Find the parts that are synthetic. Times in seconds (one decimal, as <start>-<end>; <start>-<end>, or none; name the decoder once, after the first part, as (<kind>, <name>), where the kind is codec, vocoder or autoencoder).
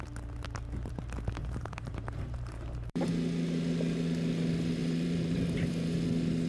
1.4-3.1 (vocoder, BigVGAN v2); 4.8-5.7